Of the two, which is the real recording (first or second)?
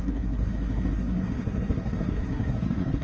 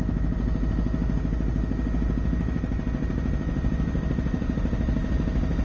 second